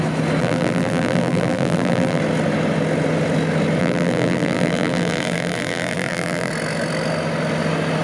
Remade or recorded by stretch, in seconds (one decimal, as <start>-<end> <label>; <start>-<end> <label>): 0.0-0.4 recorded; 0.4-2.2 remade; 2.2-3.8 recorded; 3.8-6.5 remade; 6.5-8.0 recorded